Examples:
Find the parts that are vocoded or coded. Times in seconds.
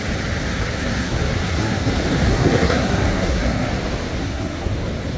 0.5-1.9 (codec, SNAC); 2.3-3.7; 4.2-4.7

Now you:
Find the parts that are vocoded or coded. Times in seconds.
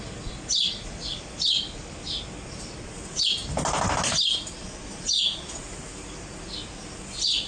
4.6-5.6 (vocoder, Vocos)